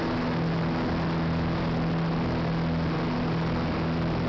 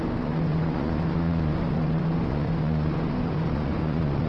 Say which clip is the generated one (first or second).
second